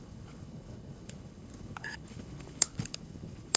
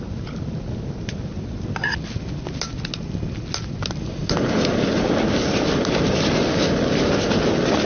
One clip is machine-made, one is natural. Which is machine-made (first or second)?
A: first